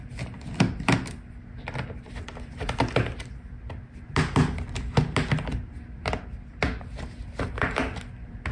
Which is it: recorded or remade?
recorded